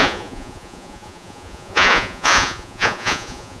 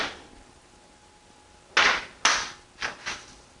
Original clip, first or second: second